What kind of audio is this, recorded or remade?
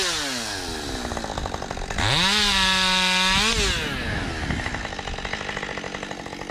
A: recorded